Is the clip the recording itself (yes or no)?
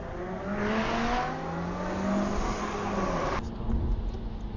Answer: yes